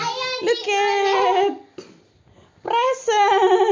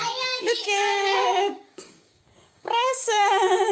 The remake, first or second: second